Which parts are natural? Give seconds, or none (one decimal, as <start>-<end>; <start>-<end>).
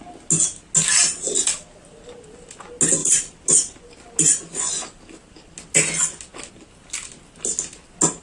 0.0-8.2